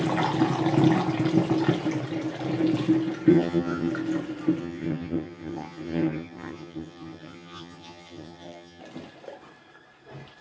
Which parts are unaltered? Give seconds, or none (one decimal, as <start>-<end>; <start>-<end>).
0.0-3.3; 3.9-4.6; 8.8-10.4